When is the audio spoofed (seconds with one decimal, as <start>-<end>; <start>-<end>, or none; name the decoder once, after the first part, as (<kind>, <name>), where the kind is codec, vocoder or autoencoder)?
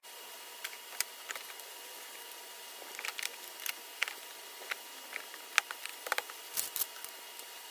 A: 5.9-6.8 (vocoder, BigVGAN v2)